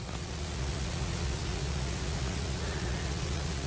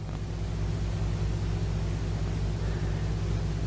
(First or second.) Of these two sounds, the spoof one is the first